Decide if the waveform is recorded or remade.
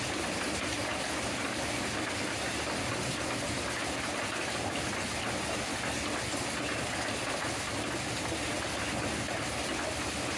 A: recorded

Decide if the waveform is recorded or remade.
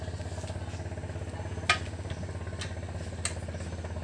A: recorded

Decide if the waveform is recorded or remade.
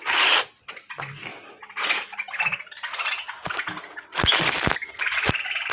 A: recorded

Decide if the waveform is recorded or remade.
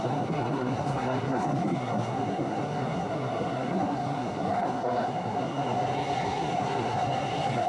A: remade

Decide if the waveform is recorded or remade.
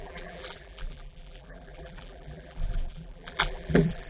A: remade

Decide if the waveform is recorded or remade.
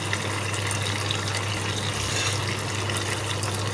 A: recorded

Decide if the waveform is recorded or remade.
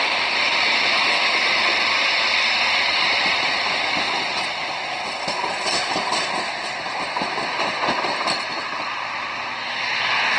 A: remade